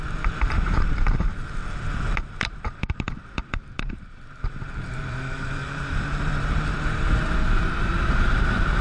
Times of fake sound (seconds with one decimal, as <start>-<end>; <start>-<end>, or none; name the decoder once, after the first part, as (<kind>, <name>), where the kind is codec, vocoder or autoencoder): 0.0-1.6 (vocoder, BigVGAN v2); 2.5-8.8